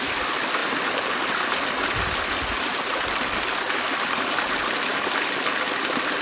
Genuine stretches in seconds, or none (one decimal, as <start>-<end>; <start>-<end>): 0.0-6.2